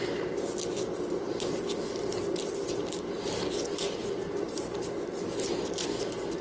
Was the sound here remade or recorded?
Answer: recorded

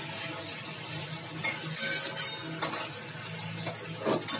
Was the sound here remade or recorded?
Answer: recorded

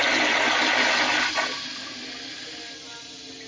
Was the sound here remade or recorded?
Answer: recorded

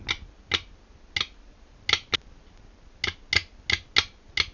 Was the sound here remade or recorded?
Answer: recorded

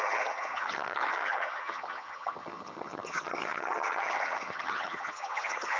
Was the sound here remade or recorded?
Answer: remade